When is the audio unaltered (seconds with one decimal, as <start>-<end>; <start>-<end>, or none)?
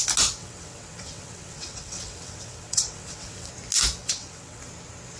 0.0-0.4; 3.5-4.0; 4.6-5.2